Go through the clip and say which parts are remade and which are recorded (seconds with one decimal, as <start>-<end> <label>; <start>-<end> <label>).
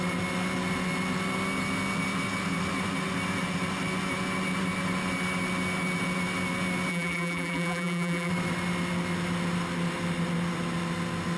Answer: 0.0-6.9 recorded; 6.9-8.3 remade; 8.3-11.4 recorded